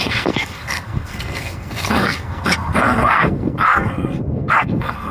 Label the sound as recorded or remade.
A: remade